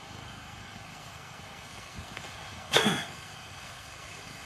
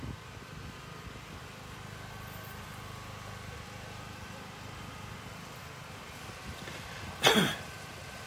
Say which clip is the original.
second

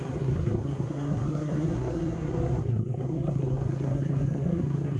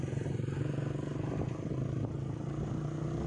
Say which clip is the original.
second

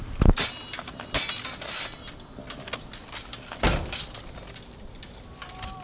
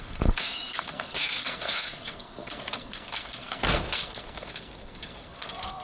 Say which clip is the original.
first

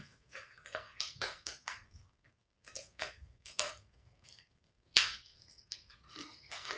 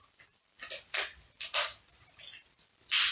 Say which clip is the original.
second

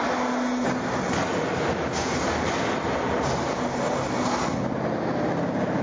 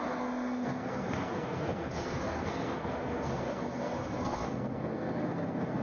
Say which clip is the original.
first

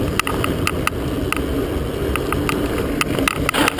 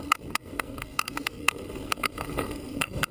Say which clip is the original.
first